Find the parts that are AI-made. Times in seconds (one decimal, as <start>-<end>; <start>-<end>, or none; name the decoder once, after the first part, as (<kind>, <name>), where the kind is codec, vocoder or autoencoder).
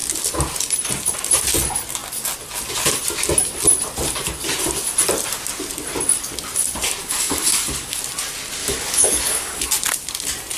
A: 7.0-8.0 (codec, DAC); 8.6-9.6